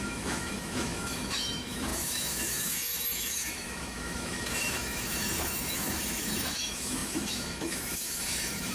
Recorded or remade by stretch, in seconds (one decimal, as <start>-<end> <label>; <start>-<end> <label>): 0.0-8.7 remade